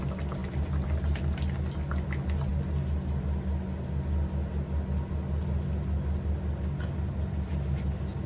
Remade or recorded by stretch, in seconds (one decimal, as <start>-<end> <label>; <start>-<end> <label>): 0.0-8.3 recorded